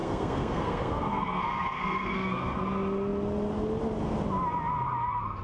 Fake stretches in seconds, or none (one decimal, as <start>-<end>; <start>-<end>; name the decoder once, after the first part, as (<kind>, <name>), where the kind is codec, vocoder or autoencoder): 0.0-2.6 (codec, SNAC)